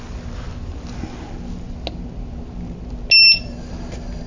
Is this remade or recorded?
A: recorded